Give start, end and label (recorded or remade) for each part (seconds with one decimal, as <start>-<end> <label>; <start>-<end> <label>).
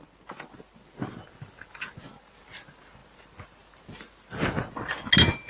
0.0-5.5 recorded